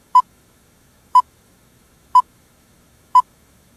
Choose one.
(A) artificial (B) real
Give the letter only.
A